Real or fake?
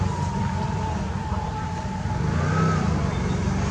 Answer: real